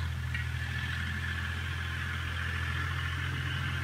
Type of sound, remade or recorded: recorded